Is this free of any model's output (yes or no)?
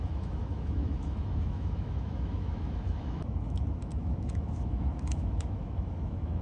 no